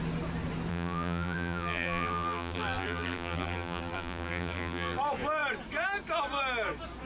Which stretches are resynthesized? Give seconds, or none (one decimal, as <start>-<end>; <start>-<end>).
0.7-5.0